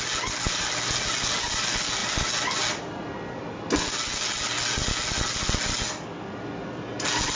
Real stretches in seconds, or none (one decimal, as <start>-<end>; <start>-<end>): 0.0-7.4